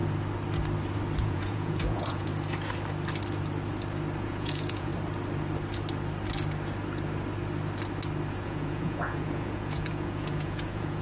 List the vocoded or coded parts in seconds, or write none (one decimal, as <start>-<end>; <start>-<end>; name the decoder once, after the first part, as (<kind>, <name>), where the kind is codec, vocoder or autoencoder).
1.2-2.3 (vocoder, Vocos); 4.2-4.9; 8.3-11.0